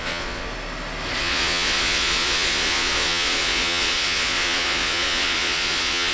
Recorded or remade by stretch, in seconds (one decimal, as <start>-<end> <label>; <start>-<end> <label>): 0.0-0.5 remade; 0.5-1.2 recorded; 1.2-6.1 remade